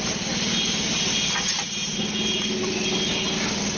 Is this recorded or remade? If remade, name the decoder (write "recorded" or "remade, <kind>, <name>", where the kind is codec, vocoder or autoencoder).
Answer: recorded